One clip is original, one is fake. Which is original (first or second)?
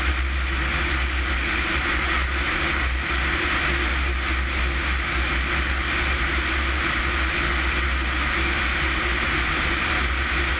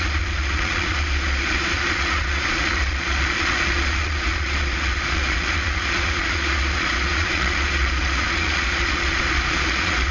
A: first